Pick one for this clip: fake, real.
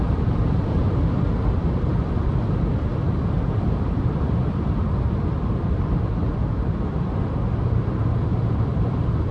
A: fake